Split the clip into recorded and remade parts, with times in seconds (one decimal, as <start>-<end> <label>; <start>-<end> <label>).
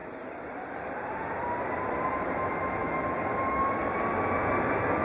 0.0-2.3 remade; 2.3-5.0 recorded